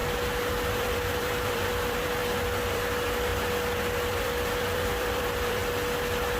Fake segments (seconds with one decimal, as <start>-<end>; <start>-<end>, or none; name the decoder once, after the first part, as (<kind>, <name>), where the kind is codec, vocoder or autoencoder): 0.5-2.2 (vocoder, BigVGAN v2); 2.7-3.3; 4.1-5.6